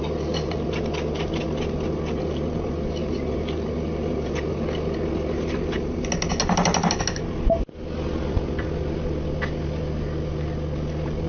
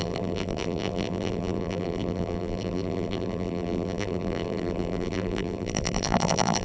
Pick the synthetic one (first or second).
second